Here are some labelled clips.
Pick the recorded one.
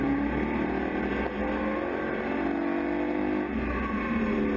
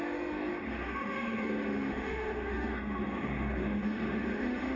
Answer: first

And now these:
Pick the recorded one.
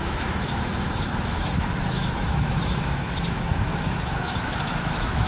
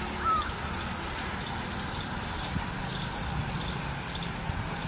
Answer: second